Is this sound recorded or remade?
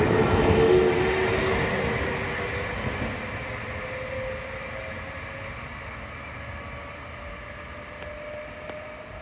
recorded